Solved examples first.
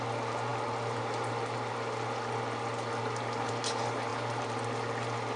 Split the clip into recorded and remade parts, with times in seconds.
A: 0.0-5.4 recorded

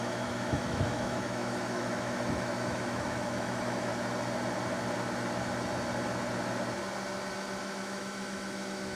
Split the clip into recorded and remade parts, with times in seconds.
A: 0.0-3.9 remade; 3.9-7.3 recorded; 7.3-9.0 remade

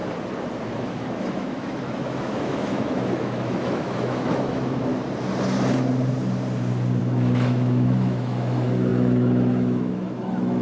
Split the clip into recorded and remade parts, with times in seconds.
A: 0.0-0.8 recorded; 0.8-4.9 remade; 4.9-7.0 recorded; 7.0-10.6 remade